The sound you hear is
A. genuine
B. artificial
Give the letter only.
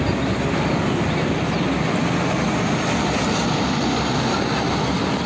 A